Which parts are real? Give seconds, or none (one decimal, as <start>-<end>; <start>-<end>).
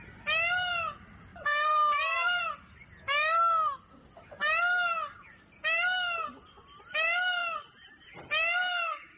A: 0.0-1.3; 2.4-9.2